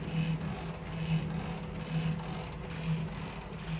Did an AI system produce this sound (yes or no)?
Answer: no